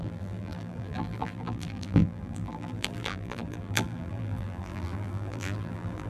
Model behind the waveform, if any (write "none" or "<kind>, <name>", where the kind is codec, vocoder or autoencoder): vocoder, BigVGAN v2